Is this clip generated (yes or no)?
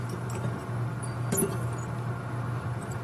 yes